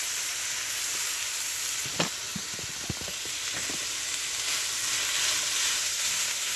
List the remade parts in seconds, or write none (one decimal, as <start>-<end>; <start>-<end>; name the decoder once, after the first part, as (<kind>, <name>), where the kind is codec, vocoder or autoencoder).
5.8-6.6 (codec, SNAC)